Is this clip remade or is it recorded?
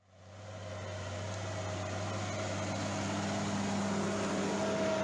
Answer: recorded